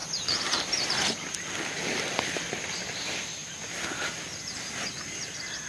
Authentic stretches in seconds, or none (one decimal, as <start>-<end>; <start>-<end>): 0.0-5.7